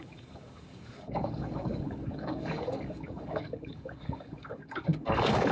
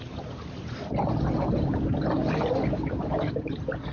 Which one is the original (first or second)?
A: second